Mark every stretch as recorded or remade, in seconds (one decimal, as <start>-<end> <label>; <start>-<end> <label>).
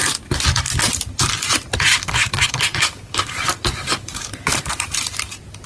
0.0-1.9 recorded; 1.9-4.7 remade; 4.7-5.7 recorded